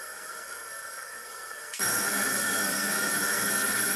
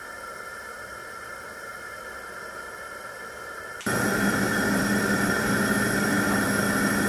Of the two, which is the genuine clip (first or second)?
second